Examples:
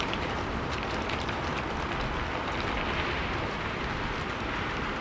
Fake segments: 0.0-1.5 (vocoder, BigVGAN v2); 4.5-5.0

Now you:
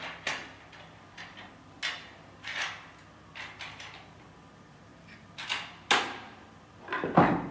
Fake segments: none

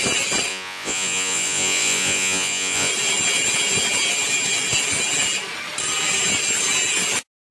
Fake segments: 0.5-2.9 (vocoder, Vocos)

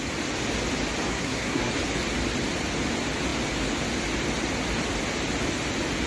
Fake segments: 1.1-1.7 (codec, SNAC)

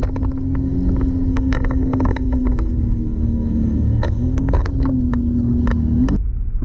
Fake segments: 1.3-4.7 (codec, SNAC)

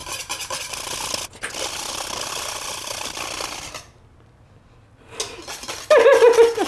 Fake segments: none